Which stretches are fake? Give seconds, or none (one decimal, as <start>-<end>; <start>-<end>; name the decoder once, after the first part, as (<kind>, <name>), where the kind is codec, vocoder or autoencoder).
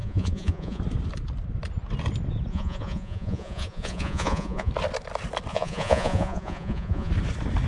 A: 0.0-0.8 (vocoder, Vocos); 2.5-4.7; 5.5-7.1